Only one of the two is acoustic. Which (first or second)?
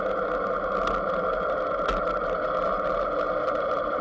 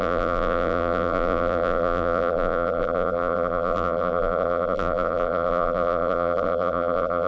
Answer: first